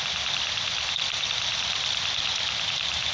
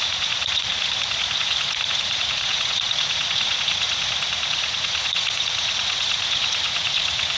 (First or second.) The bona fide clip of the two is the first